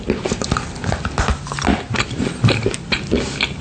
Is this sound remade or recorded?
recorded